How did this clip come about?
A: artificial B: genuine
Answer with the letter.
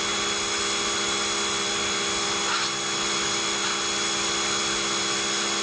B